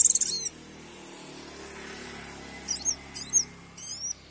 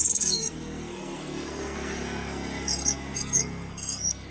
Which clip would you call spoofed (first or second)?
second